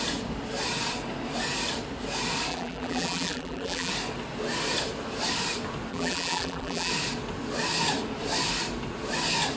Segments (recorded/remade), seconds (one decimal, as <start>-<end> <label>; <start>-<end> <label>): 0.0-2.5 recorded; 2.5-3.9 remade; 3.9-5.9 recorded; 5.9-6.9 remade; 6.9-9.6 recorded